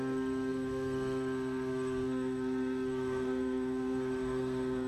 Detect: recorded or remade remade